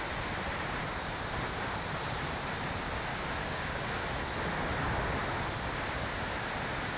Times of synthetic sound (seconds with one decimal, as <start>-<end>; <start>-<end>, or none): 3.4-3.9